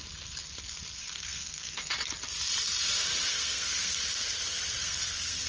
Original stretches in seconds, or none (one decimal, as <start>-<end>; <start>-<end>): 0.0-1.0; 1.9-3.3; 4.0-4.8